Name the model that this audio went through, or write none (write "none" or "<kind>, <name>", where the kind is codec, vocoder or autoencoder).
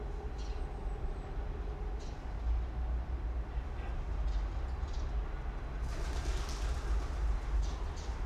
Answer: none